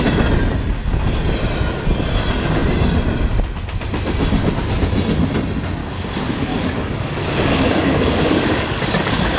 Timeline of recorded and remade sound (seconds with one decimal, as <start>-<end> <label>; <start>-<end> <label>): 0.0-5.8 recorded; 5.8-9.4 remade